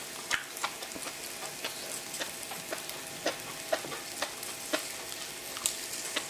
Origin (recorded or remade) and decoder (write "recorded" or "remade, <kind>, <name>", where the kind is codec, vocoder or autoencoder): recorded